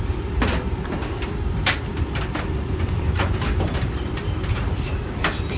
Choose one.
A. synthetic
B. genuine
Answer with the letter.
B